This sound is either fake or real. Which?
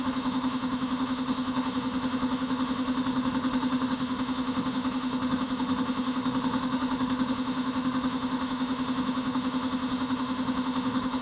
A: fake